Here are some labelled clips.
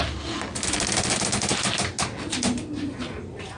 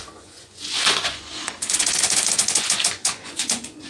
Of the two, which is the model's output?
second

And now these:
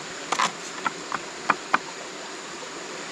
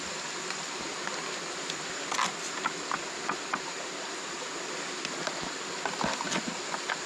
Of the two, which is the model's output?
first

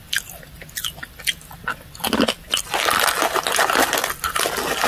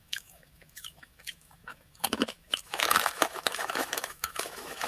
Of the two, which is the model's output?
second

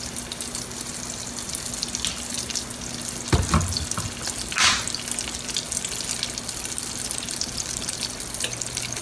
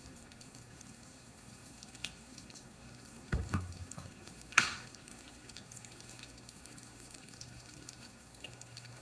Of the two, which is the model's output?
second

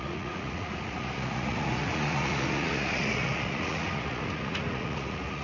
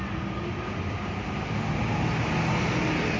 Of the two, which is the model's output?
first